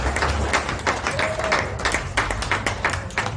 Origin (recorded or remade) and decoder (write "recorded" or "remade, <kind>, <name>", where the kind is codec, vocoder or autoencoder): recorded